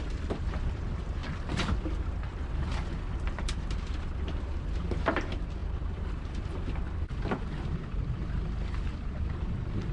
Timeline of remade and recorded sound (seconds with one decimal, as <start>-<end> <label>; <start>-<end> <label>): 0.0-9.9 remade